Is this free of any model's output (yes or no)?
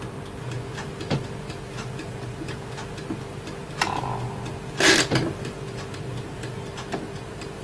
yes